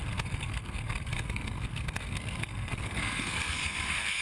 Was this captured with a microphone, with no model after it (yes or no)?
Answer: no